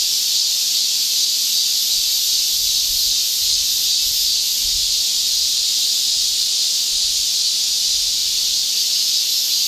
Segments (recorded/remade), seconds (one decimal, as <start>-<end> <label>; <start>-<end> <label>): 0.0-2.6 recorded; 2.6-6.0 remade; 6.0-8.2 recorded; 8.2-8.8 remade; 8.8-9.7 recorded